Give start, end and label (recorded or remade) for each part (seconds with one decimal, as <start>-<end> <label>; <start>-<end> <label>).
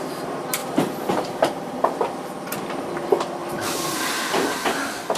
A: 0.0-0.6 recorded; 0.6-1.9 remade; 1.9-3.4 recorded; 3.4-4.1 remade; 4.1-5.2 recorded